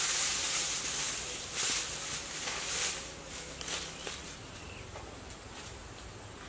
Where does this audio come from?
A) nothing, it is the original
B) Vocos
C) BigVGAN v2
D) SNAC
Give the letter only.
A